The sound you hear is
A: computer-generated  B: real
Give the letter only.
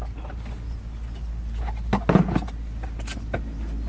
B